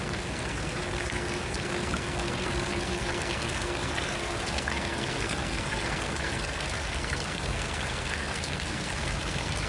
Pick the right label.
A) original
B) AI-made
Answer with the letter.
B